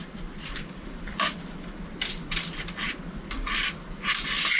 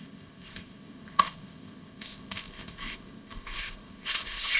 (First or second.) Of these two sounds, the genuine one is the first